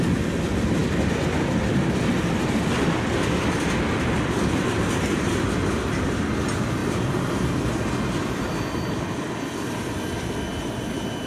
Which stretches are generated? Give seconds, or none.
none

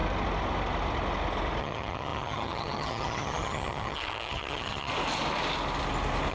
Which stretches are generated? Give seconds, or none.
1.6-4.9

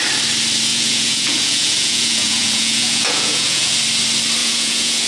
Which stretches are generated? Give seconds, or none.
0.7-3.8; 4.4-5.1

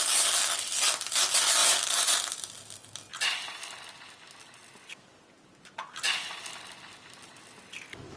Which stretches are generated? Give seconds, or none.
1.6-2.2